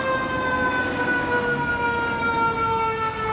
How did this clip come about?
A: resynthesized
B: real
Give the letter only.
A